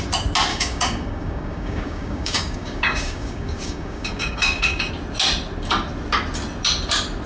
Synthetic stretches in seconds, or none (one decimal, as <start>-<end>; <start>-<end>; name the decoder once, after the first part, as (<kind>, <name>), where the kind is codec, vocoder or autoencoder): 0.5-4.9 (codec, DAC)